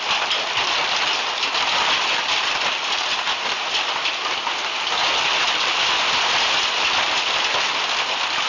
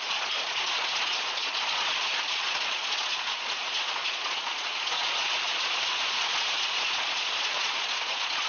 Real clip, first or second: first